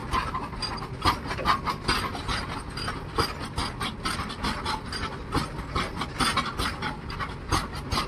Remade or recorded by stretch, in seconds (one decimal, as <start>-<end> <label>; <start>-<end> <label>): 0.0-8.1 recorded